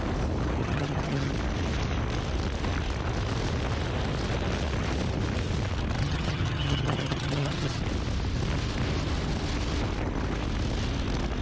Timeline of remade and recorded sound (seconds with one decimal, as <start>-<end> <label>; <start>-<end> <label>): 0.0-0.6 recorded; 0.6-1.3 remade; 1.3-6.0 recorded; 6.0-7.8 remade; 7.8-11.4 recorded